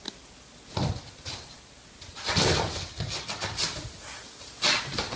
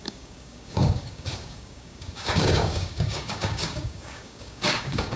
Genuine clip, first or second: first